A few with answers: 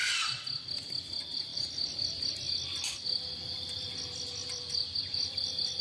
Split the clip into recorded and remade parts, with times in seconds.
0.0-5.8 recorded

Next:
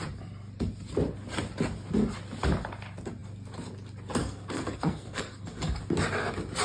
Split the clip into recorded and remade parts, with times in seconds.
0.0-4.2 recorded; 4.2-5.8 remade; 5.8-6.6 recorded

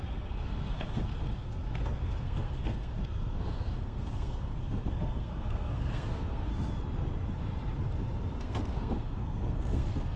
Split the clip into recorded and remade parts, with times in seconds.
0.0-6.5 remade; 6.5-8.4 recorded; 8.4-10.2 remade

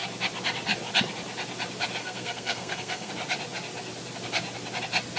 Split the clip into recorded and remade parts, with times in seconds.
0.0-2.0 recorded; 2.0-3.1 remade; 3.1-5.2 recorded

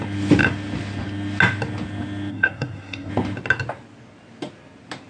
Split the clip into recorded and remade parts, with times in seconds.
0.0-2.3 recorded; 2.3-3.1 remade; 3.1-5.1 recorded

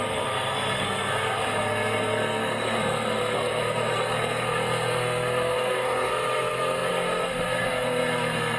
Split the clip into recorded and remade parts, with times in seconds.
0.0-8.6 remade

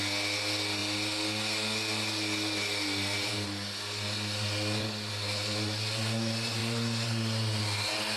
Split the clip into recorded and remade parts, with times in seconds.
0.0-8.2 recorded

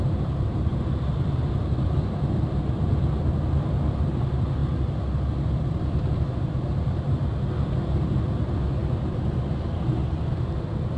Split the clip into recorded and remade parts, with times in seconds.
0.0-11.0 recorded